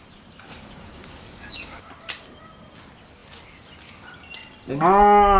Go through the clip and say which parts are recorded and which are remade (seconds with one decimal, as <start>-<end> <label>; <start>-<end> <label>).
0.0-0.5 recorded; 0.5-1.8 remade; 1.8-5.4 recorded